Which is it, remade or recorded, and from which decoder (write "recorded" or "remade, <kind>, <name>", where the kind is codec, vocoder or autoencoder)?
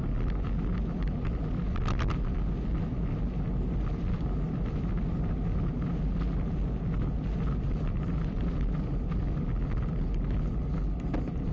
recorded